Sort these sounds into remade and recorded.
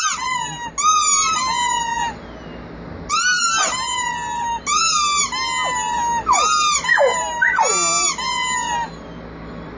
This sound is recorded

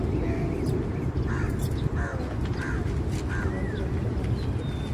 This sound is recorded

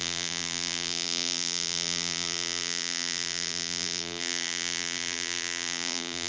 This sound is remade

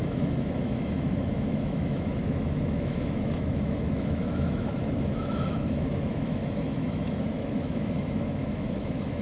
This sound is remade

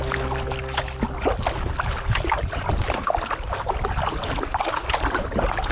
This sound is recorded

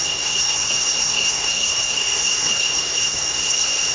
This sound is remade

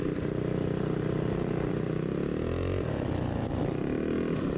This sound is recorded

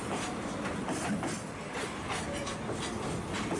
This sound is recorded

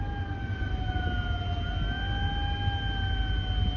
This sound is recorded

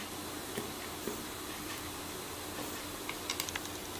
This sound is recorded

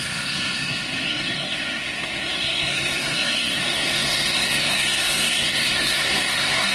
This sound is remade